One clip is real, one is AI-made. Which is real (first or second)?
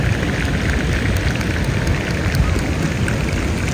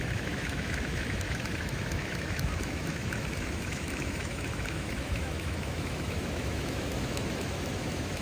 first